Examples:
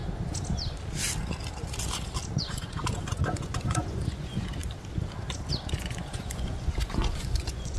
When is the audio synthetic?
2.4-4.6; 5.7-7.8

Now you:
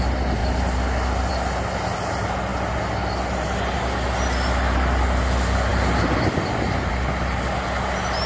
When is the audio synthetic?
none